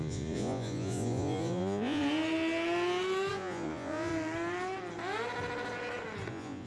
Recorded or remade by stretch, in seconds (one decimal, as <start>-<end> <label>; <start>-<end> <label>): 0.0-2.0 remade; 2.0-3.3 recorded; 3.3-4.1 remade; 4.1-6.3 recorded; 6.3-6.7 remade